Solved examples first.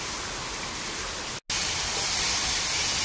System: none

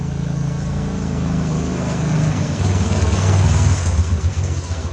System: codec, SNAC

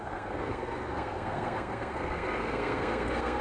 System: codec, SNAC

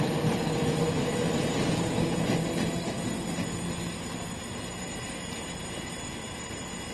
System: none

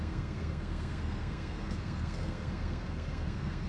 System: codec, SNAC